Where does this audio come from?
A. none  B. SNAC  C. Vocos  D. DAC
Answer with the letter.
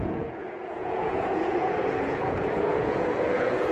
C